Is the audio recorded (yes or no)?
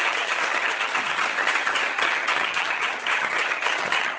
no